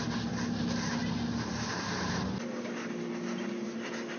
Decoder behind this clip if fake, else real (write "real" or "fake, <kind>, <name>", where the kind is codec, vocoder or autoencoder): real